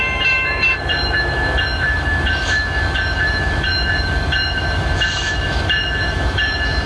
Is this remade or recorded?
remade